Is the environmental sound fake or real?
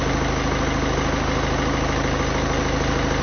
real